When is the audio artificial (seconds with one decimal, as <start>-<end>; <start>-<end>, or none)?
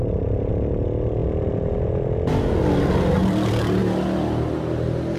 0.0-0.5; 1.2-2.3; 3.2-3.8